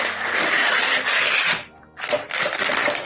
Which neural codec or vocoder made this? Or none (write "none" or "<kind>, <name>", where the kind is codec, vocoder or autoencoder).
none